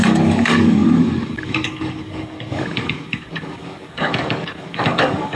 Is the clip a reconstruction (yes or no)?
yes